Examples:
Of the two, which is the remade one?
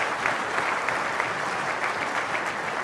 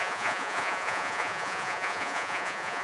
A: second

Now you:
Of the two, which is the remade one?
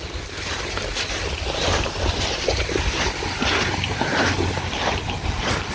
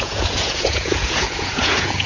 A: second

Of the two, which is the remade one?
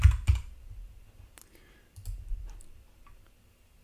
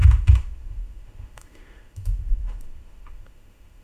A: second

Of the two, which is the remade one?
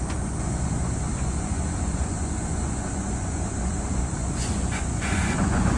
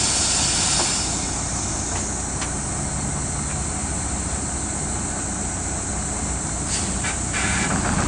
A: first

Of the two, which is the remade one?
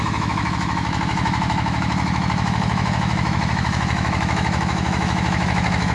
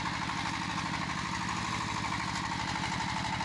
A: first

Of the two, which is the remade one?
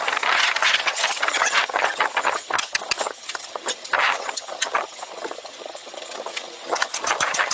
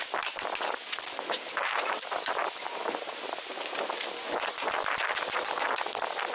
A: first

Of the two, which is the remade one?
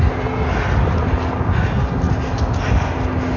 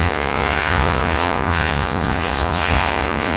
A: second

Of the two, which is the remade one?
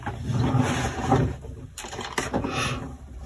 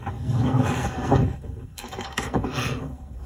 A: second